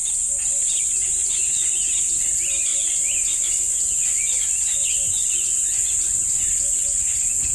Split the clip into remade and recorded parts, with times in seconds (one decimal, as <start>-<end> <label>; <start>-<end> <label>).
0.0-1.2 recorded; 1.2-1.9 remade; 1.9-2.7 recorded; 2.7-7.5 remade